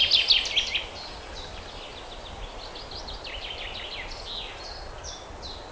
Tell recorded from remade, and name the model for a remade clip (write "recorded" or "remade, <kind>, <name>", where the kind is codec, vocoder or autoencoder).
recorded